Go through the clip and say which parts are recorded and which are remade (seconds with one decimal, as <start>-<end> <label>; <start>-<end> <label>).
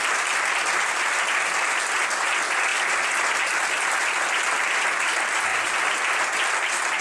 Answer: 0.0-5.5 recorded; 5.5-6.0 remade; 6.0-7.0 recorded